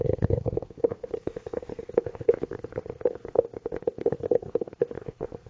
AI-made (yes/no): yes